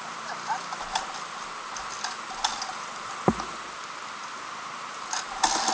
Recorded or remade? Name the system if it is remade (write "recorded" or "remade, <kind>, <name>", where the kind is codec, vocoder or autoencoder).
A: recorded